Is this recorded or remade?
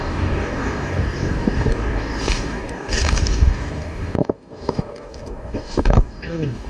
remade